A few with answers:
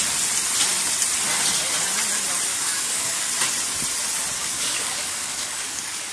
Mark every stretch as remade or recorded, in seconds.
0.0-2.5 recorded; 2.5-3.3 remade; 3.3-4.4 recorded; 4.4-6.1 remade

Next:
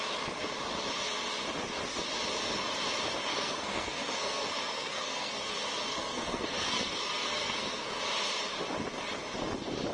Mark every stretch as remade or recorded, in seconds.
0.0-3.3 recorded; 3.3-5.5 remade; 5.5-5.9 recorded; 5.9-8.0 remade; 8.0-9.9 recorded

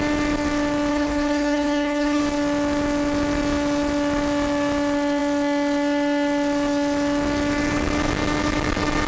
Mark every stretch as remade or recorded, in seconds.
0.0-0.9 recorded; 0.9-2.2 remade; 2.2-9.1 recorded

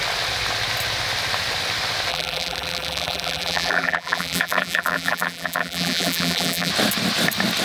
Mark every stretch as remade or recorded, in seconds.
0.0-2.1 recorded; 2.1-6.7 remade; 6.7-7.6 recorded

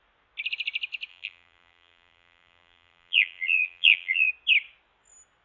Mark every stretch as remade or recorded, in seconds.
0.0-1.1 recorded; 1.1-4.3 remade; 4.3-5.4 recorded

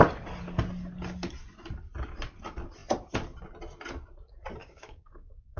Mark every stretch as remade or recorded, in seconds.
0.0-4.6 recorded; 4.6-5.6 remade

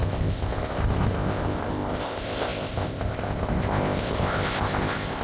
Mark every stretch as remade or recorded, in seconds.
0.0-5.2 remade